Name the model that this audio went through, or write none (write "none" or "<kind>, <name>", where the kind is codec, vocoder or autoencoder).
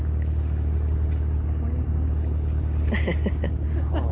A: none